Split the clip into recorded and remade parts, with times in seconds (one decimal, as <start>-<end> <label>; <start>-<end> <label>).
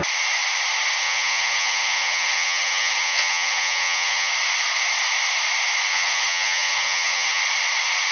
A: 0.0-1.0 recorded; 1.0-4.3 remade; 4.3-5.9 recorded; 5.9-7.4 remade; 7.4-8.1 recorded